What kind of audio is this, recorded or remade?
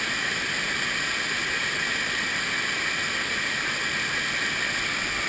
recorded